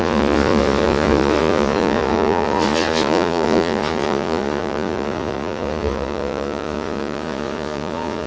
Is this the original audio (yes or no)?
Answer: no